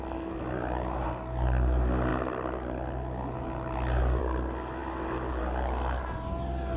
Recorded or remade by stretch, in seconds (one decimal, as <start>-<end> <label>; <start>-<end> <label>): 0.0-6.8 recorded